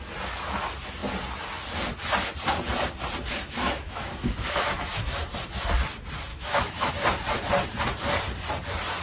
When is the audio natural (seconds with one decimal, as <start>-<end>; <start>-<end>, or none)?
0.0-3.3; 5.2-6.3; 6.9-9.0